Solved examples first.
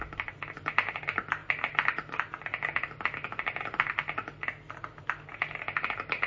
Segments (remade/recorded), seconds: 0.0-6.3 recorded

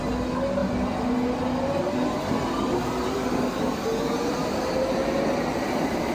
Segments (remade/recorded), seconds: 0.0-6.1 recorded

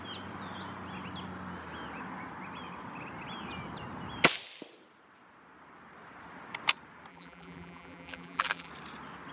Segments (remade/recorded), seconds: 0.0-7.1 recorded; 7.1-8.7 remade; 8.7-9.3 recorded

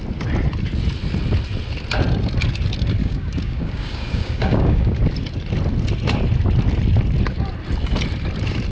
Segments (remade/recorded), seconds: 0.0-3.0 recorded; 3.0-5.0 remade; 5.0-8.7 recorded

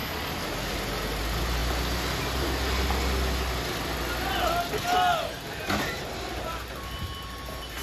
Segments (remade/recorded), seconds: 0.0-7.8 recorded

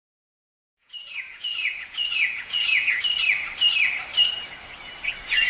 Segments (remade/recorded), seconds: 0.0-3.0 remade; 3.0-5.5 recorded